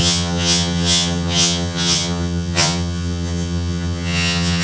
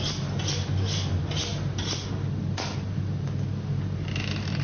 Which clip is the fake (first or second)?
first